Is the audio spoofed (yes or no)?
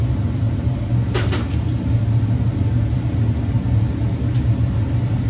no